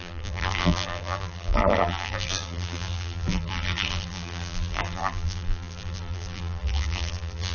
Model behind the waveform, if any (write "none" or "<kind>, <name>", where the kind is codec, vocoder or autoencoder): vocoder, BigVGAN v2